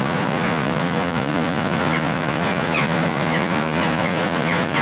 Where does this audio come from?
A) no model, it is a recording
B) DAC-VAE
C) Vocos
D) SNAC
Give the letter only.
C